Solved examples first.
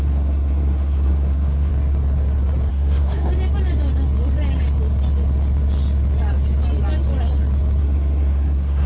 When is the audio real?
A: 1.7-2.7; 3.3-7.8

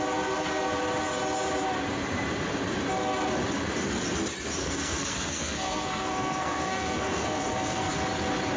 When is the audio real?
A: 0.0-4.6; 7.9-8.6

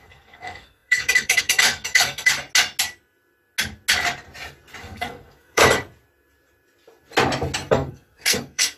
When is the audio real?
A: 2.3-4.8; 5.6-7.7

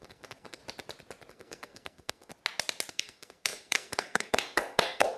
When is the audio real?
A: 0.6-1.3; 2.3-2.9

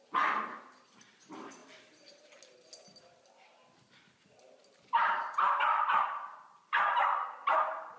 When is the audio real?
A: 0.0-8.0